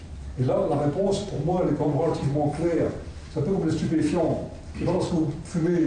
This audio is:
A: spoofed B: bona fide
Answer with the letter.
A